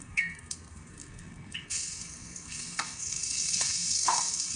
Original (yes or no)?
no